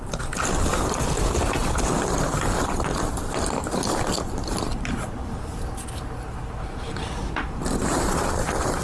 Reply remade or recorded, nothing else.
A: remade